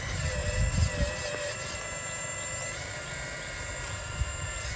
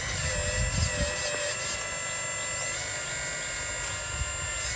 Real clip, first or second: second